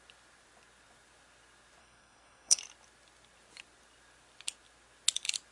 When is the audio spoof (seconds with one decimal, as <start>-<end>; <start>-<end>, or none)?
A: 1.8-2.6